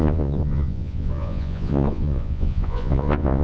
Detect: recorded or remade remade